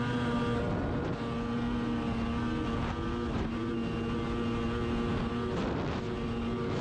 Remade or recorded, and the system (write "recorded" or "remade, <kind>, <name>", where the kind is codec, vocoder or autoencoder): recorded